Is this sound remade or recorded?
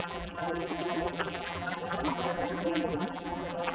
remade